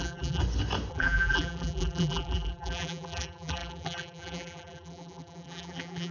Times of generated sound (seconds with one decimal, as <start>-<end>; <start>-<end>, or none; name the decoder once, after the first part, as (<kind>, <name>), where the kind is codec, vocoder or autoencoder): 0.0-0.4 (vocoder, BigVGAN v2); 0.9-6.1